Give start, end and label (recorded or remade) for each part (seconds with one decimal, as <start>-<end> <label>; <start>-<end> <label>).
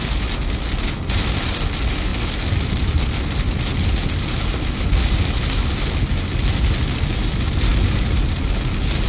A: 0.0-9.1 recorded